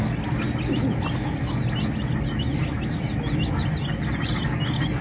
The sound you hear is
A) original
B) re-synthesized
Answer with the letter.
A